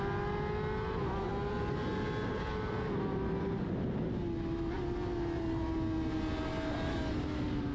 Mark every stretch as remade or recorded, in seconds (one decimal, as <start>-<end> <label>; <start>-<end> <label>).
0.0-7.7 recorded